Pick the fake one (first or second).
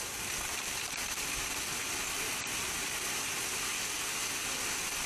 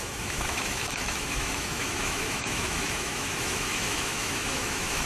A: second